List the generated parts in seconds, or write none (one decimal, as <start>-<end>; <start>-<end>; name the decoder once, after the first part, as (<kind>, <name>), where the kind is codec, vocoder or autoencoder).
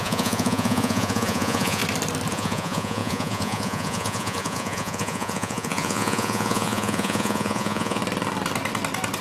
0.0-1.8 (vocoder, Vocos); 2.3-8.0